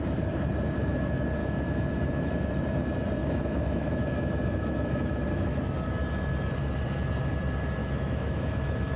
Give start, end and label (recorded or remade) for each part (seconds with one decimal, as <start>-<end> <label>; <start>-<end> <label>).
0.0-1.4 recorded; 1.4-2.3 remade; 2.3-3.2 recorded; 3.2-5.6 remade; 5.6-7.8 recorded; 7.8-9.0 remade